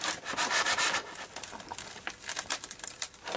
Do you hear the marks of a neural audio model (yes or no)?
yes